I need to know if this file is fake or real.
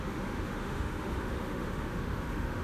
fake